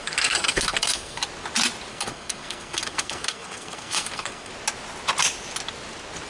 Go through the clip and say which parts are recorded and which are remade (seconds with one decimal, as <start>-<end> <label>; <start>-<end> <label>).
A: 0.0-1.2 remade; 1.2-1.9 recorded; 1.9-4.5 remade; 4.5-6.3 recorded